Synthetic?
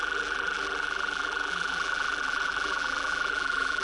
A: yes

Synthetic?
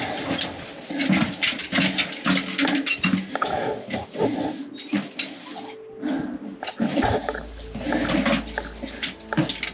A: no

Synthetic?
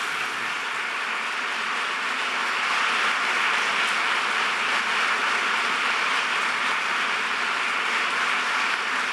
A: no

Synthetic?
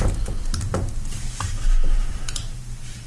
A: yes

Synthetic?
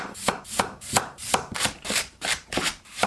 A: yes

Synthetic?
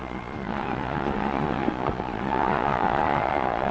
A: yes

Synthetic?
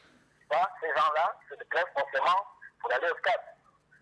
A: no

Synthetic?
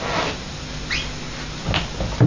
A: no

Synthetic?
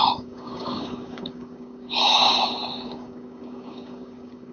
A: yes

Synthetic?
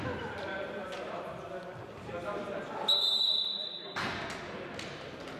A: no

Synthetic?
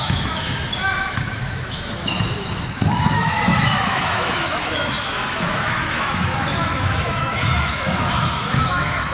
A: yes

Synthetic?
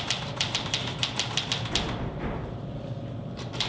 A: no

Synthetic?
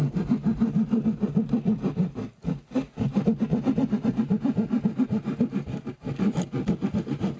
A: no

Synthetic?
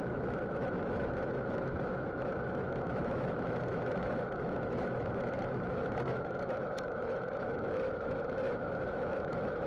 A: yes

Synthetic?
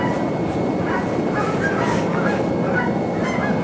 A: no